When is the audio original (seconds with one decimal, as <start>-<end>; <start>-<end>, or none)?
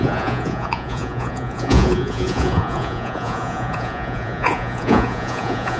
none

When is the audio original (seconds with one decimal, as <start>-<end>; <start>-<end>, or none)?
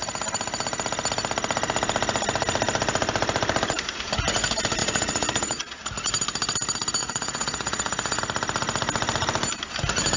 0.0-4.8; 5.8-7.0; 8.2-10.2